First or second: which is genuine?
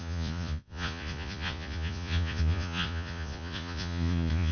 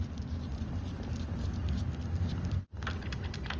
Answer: second